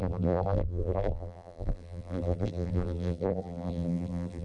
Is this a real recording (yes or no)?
no